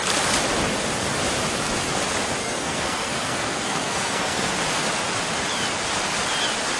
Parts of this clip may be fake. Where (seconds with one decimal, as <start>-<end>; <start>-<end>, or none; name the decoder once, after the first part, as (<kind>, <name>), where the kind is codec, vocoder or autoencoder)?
2.4-4.5 (codec, SNAC)